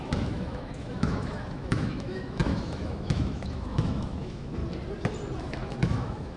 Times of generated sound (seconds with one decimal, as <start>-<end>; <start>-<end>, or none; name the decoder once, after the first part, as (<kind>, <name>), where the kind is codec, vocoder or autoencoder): 0.0-4.6 (autoencoder, DAC-VAE); 5.4-6.4